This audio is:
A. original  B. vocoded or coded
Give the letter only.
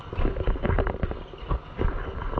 B